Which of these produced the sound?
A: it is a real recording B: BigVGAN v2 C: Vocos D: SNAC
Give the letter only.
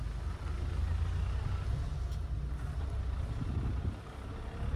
A